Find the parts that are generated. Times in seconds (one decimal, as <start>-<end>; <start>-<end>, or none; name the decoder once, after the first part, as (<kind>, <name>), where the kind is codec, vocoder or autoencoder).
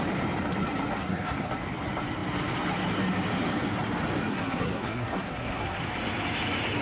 1.0-1.5 (codec, SNAC); 4.3-5.8